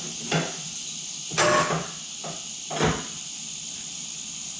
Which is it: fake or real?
real